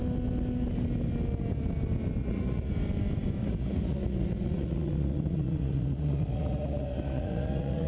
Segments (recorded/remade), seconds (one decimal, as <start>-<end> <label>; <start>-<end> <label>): 0.0-2.2 recorded; 2.2-2.7 remade; 2.7-3.4 recorded; 3.4-7.9 remade